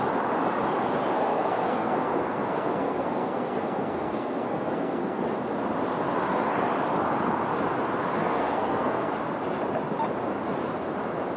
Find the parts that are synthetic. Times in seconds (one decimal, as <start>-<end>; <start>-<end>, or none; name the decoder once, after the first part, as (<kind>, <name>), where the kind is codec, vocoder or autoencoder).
1.3-5.2 (codec, SNAC); 8.2-9.1